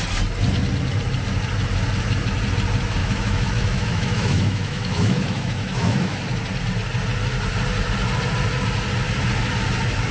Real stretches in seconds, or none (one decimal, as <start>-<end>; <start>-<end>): 0.0-3.0; 6.2-10.1